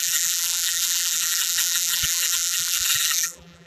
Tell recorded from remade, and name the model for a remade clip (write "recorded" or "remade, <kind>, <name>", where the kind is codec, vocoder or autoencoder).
remade, vocoder, BigVGAN v2